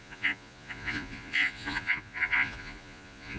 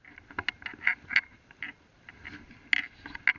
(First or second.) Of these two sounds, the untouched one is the second